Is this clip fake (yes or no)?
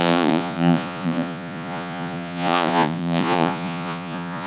yes